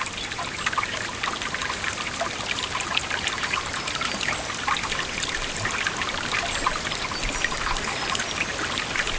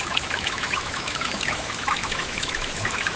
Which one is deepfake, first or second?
second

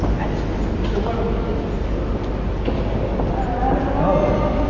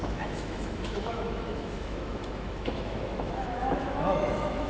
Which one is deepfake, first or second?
second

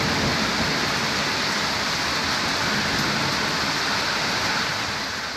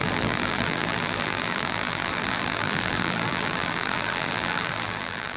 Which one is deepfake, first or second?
second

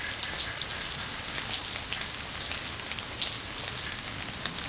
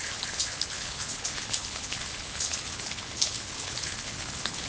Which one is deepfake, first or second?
second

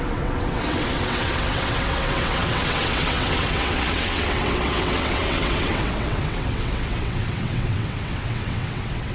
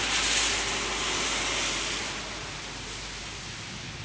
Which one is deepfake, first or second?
first